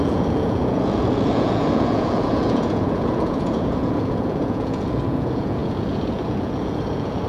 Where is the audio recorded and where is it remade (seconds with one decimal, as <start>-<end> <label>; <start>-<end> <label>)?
0.0-7.3 remade

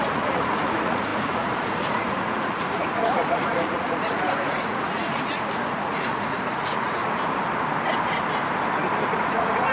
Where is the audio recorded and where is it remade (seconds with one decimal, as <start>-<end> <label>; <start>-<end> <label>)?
0.0-7.0 remade; 7.0-9.1 recorded; 9.1-9.7 remade

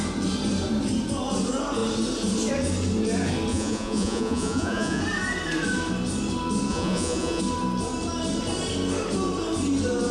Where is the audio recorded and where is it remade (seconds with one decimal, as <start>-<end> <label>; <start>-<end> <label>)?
0.0-3.5 recorded; 3.5-5.0 remade; 5.0-6.7 recorded; 6.7-7.4 remade; 7.4-10.1 recorded

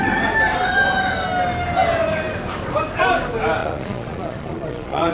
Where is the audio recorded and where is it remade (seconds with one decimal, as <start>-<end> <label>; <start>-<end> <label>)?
0.0-3.6 recorded; 3.6-5.1 remade

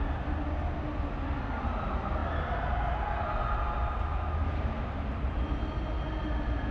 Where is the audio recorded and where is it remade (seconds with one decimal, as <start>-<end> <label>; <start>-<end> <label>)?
0.0-6.7 recorded

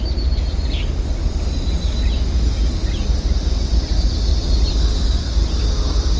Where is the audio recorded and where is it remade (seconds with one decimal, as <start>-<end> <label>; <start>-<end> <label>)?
0.0-6.2 recorded

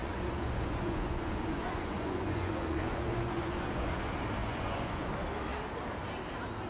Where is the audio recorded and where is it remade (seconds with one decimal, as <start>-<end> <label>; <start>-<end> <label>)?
0.0-4.0 remade; 4.0-4.4 recorded; 4.4-5.1 remade; 5.1-6.7 recorded

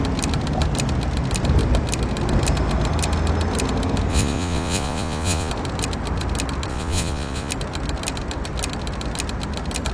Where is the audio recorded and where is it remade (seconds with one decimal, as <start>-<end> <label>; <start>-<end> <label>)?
0.0-4.1 recorded; 4.1-5.5 remade; 5.5-6.7 recorded; 6.7-7.5 remade; 7.5-9.9 recorded